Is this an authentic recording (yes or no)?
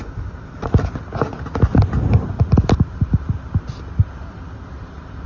yes